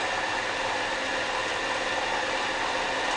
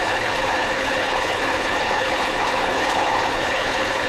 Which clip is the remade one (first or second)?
second